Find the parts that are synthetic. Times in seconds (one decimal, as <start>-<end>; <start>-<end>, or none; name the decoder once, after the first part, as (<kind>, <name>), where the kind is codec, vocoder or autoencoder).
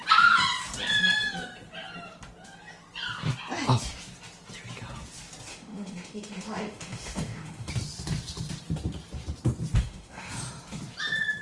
5.5-7.7 (autoencoder, DAC-VAE); 9.8-10.3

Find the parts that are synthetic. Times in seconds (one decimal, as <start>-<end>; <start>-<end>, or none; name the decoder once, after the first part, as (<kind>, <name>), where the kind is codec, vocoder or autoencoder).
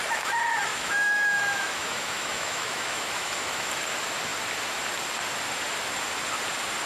0.7-3.7 (autoencoder, DAC-VAE)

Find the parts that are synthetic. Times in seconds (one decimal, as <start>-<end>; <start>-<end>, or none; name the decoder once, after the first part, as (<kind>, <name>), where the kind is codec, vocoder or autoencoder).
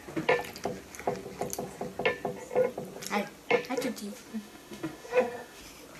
4.3-5.6 (autoencoder, DAC-VAE)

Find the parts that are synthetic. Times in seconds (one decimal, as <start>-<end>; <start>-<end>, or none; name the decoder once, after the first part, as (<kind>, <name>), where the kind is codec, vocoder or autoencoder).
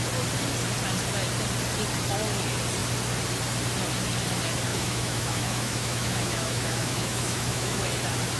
4.7-7.9 (autoencoder, DAC-VAE)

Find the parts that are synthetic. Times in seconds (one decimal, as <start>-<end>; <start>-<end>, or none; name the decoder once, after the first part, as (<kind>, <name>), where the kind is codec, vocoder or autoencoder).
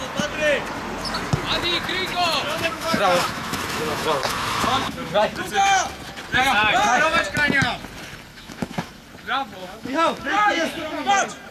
2.1-5.1 (autoencoder, DAC-VAE); 8.3-8.9; 9.6-11.1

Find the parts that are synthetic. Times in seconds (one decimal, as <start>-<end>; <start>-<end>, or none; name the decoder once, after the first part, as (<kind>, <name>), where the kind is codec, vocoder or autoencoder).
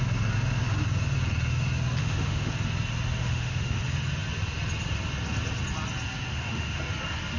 2.0-2.5 (autoencoder, DAC-VAE); 3.2-3.8; 6.3-6.8